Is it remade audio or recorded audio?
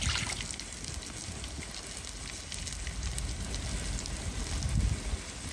recorded